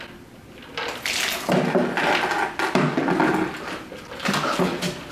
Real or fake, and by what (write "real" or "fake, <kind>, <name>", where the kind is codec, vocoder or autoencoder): real